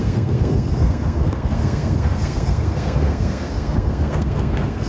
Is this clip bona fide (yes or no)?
no